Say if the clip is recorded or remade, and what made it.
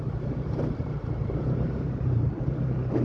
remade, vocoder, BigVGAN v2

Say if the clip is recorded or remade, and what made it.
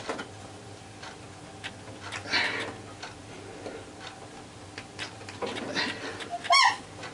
recorded